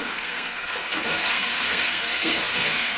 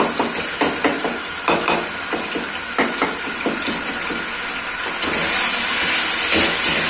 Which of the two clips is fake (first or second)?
first